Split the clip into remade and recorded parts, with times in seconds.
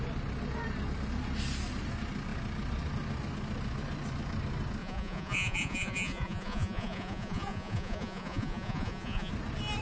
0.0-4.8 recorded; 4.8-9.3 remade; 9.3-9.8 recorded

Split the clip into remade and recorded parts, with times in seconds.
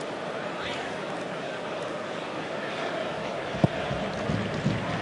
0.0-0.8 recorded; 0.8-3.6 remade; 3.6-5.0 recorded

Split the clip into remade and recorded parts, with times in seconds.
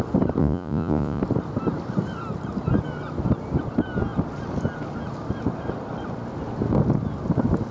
0.0-0.4 recorded; 0.4-1.2 remade; 1.2-7.7 recorded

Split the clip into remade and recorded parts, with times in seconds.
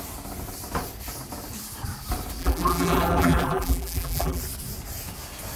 0.0-2.4 recorded; 2.4-4.4 remade; 4.4-5.6 recorded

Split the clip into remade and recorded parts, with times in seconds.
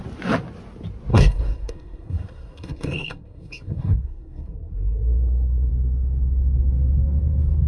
0.0-1.1 recorded; 1.1-5.7 remade; 5.7-7.7 recorded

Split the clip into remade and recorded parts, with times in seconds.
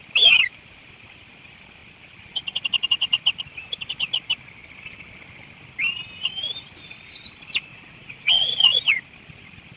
0.0-7.7 recorded; 7.7-8.8 remade; 8.8-9.8 recorded